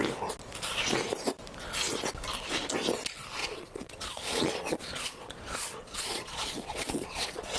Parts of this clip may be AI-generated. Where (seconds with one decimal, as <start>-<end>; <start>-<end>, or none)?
3.4-7.6